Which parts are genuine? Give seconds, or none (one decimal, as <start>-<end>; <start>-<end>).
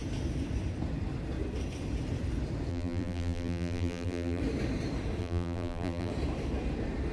0.0-2.7; 4.4-5.2; 6.1-7.1